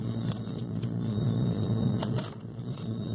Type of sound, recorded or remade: remade